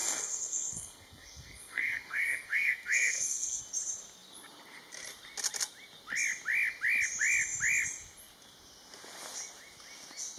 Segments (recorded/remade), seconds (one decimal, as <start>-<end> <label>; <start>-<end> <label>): 0.0-3.6 remade; 3.6-10.4 recorded